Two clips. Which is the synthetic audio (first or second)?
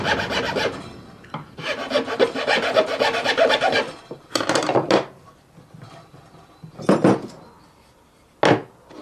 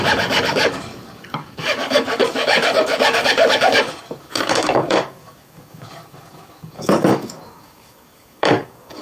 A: second